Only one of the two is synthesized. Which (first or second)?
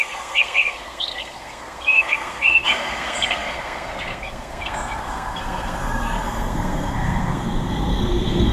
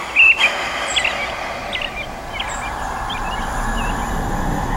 first